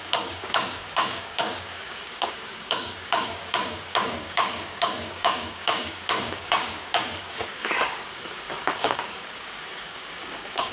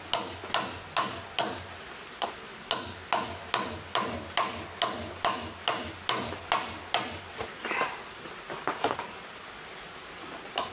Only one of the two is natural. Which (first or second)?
second